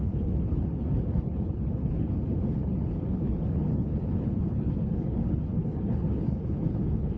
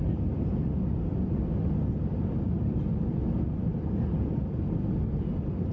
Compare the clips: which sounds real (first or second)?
second